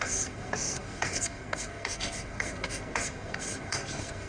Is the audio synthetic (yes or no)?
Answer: yes